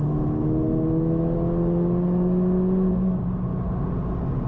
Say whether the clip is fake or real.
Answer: real